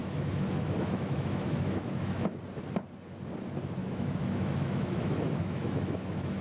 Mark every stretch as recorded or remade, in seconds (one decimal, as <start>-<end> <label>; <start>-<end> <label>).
0.0-2.3 remade; 2.3-3.8 recorded; 3.8-6.4 remade